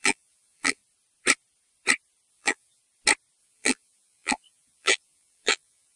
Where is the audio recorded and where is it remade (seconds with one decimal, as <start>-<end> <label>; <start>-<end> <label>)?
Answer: 0.0-0.8 remade; 0.8-2.3 recorded; 2.3-2.8 remade; 2.8-3.4 recorded; 3.4-6.0 remade